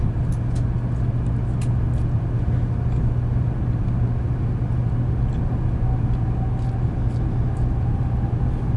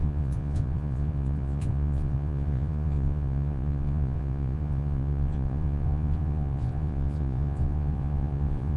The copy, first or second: second